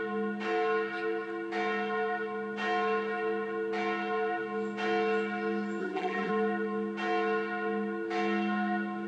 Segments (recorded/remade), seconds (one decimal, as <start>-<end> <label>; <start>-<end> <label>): 0.0-5.8 recorded; 5.8-6.3 remade; 6.3-9.1 recorded